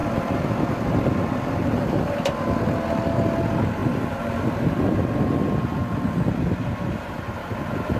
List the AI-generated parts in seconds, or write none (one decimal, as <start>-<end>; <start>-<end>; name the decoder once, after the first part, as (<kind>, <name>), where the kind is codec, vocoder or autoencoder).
none